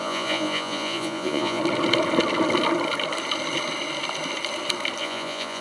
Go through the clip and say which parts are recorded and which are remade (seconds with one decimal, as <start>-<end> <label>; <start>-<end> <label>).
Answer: 0.0-1.6 remade; 1.6-5.0 recorded; 5.0-5.6 remade